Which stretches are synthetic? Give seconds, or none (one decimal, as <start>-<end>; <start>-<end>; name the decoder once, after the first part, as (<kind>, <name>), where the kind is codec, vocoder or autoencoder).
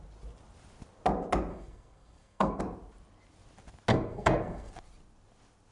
1.5-2.6 (codec, SNAC); 3.9-4.7